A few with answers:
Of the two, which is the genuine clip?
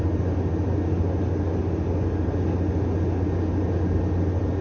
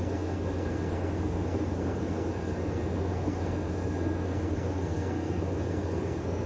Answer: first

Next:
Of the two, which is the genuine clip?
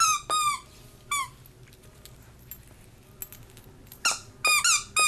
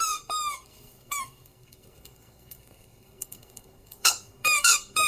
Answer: first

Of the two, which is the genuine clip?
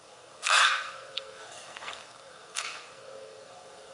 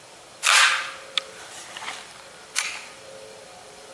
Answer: second